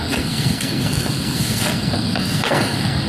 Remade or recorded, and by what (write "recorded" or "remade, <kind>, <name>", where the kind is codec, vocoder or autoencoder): remade, codec, SNAC